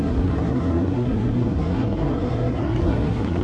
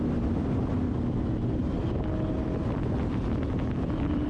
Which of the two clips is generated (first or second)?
first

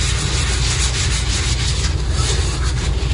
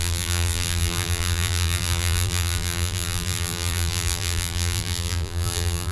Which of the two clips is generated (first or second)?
second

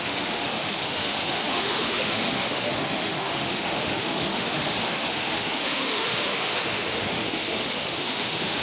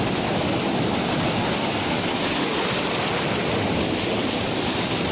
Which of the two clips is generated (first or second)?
first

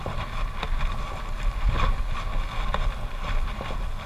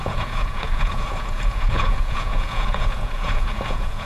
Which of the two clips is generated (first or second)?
second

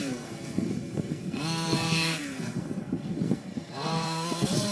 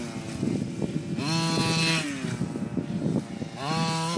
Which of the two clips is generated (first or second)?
first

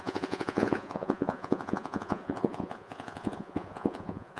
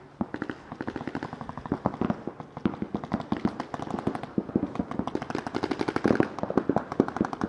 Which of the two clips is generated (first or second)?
first